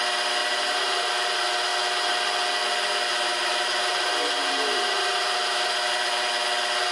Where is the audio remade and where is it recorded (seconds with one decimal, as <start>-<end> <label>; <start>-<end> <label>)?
0.0-0.4 recorded; 0.4-1.1 remade; 1.1-3.1 recorded; 3.1-6.3 remade; 6.3-6.9 recorded